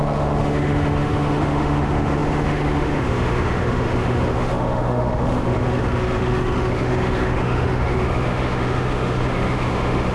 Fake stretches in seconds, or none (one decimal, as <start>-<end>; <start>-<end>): 0.0-10.1